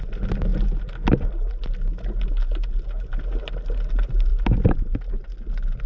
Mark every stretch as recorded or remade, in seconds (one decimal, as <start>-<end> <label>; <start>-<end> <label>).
0.0-5.9 recorded